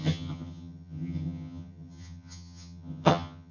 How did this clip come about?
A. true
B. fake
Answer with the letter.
B